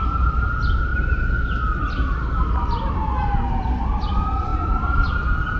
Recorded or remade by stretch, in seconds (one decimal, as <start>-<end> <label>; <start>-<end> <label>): 0.0-5.6 recorded